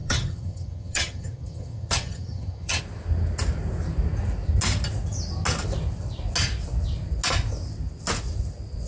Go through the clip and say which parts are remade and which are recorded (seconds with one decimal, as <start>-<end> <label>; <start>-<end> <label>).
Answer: 0.0-2.8 remade; 2.8-8.9 recorded